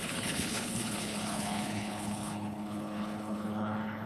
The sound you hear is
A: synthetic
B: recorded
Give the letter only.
A